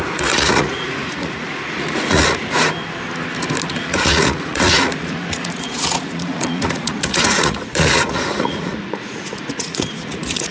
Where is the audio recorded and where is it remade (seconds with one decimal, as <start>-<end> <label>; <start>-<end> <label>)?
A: 0.0-2.6 remade; 2.6-3.7 recorded; 3.7-10.5 remade